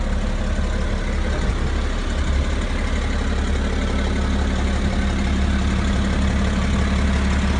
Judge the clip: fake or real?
real